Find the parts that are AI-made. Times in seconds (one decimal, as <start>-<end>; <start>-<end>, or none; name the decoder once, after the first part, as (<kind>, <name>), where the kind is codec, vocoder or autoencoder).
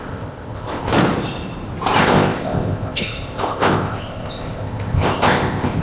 0.0-0.9 (codec, ZipCodec); 2.0-5.8